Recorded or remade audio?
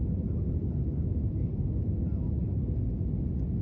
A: recorded